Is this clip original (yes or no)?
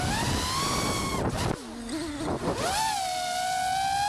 yes